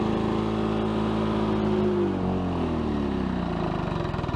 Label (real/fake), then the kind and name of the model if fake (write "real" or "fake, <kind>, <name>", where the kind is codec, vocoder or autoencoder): real